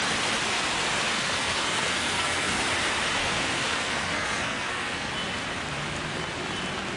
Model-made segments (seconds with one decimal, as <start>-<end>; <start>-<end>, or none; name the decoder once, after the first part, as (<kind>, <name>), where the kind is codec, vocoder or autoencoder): 1.1-2.6 (codec, SNAC); 3.2-5.1